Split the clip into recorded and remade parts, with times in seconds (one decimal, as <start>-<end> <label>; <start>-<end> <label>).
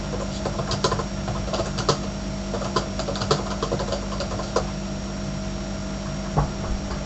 0.0-7.1 recorded